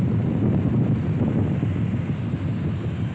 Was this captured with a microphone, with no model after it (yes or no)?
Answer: yes